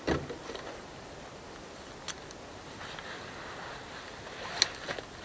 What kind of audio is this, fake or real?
real